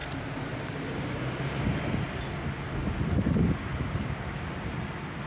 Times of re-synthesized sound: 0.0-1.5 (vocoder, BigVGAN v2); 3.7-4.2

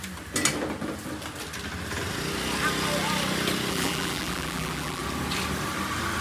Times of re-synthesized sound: 3.7-5.0 (vocoder, BigVGAN v2)

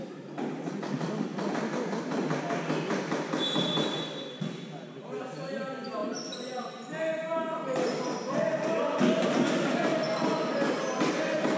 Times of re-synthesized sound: none

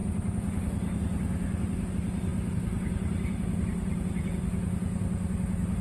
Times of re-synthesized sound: 2.3-4.3 (vocoder, BigVGAN v2)

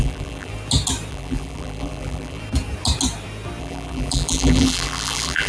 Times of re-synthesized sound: 0.0-0.5 (vocoder, BigVGAN v2); 1.1-2.4; 3.6-5.5

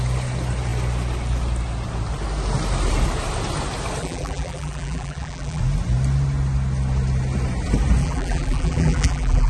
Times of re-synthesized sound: 4.0-5.6 (vocoder, BigVGAN v2); 8.0-9.5

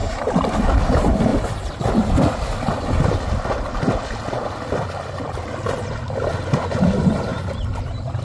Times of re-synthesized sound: 0.0-0.8 (vocoder, BigVGAN v2); 7.3-8.2

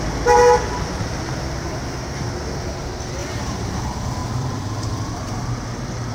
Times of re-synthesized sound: 3.2-3.8 (vocoder, BigVGAN v2); 4.2-6.1